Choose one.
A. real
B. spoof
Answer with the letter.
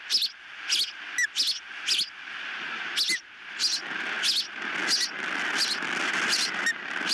A